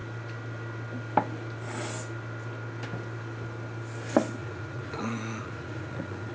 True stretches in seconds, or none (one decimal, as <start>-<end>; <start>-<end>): 0.0-4.4